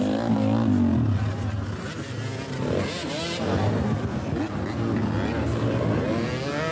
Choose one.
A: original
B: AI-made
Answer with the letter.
A